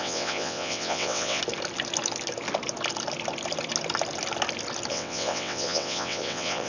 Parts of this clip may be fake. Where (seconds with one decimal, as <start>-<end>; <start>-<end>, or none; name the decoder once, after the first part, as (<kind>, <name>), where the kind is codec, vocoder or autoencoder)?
0.0-1.4 (vocoder, WaveNeXt); 4.9-6.7